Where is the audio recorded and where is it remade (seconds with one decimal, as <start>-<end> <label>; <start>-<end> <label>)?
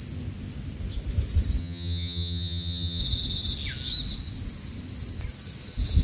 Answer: 0.0-1.6 recorded; 1.6-3.0 remade; 3.0-6.0 recorded